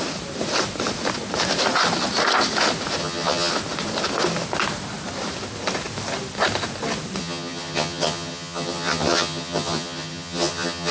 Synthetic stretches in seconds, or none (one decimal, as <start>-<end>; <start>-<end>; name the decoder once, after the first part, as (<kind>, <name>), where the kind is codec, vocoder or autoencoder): 3.0-3.5 (vocoder, HiFi-GAN); 7.2-10.9